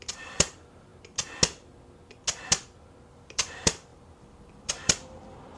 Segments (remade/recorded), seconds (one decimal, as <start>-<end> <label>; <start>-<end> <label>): 0.0-0.9 remade; 0.9-3.1 recorded; 3.1-5.6 remade